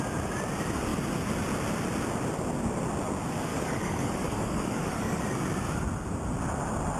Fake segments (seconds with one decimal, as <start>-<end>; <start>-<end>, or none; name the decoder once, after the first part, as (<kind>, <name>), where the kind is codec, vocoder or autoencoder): 3.5-5.2 (codec, DAC)